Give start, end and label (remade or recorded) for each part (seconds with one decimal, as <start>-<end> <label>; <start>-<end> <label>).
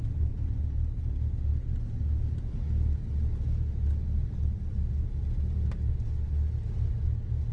0.0-7.5 recorded